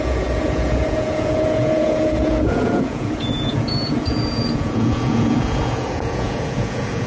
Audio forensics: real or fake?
fake